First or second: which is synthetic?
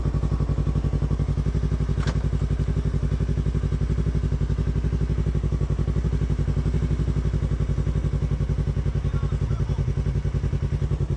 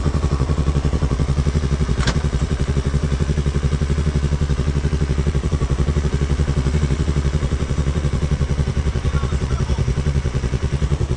second